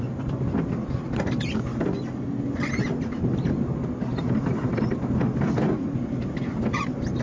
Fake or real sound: real